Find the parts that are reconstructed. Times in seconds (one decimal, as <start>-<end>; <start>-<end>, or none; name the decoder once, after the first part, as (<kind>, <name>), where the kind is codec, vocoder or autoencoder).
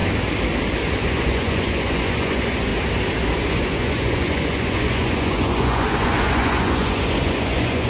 1.0-2.7 (vocoder, Vocos); 3.5-7.9